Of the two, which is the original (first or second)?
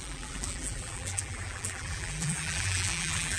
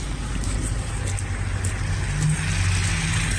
second